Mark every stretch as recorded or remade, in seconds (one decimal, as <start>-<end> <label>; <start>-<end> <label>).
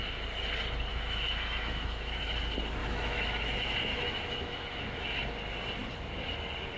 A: 0.0-0.9 recorded; 0.9-2.2 remade; 2.2-2.8 recorded; 2.8-5.2 remade; 5.2-6.8 recorded